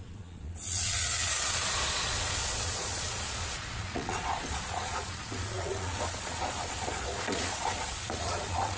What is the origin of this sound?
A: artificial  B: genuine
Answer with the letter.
A